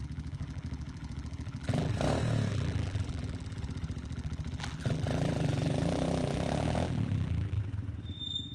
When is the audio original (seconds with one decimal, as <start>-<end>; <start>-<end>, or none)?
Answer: 1.9-2.5; 7.6-8.5